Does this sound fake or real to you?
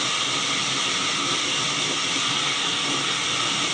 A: real